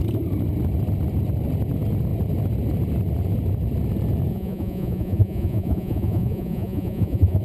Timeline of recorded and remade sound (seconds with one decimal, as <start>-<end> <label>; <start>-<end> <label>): 0.0-4.3 recorded; 4.3-7.4 remade